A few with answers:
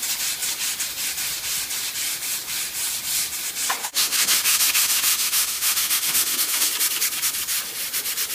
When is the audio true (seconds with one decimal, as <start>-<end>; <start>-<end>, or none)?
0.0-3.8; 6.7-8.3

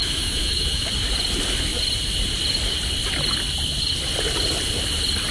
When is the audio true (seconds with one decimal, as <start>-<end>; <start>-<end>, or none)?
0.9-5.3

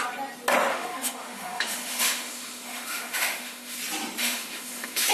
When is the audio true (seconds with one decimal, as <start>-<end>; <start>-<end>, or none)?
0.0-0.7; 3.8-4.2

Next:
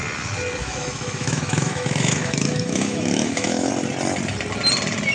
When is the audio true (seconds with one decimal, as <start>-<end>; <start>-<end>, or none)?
0.0-0.6; 3.7-5.1

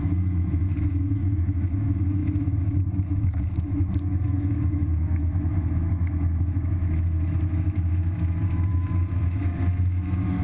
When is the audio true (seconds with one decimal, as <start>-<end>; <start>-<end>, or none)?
none

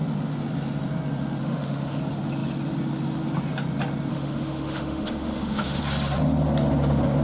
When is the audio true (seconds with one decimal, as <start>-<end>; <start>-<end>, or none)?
0.0-1.4; 2.0-4.1; 5.8-7.2

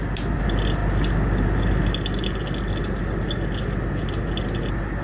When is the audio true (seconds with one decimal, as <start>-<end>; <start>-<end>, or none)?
0.0-5.0